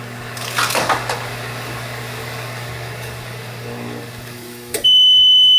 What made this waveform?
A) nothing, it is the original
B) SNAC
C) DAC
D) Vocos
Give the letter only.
C